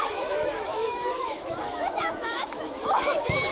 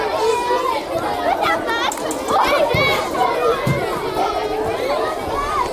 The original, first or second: second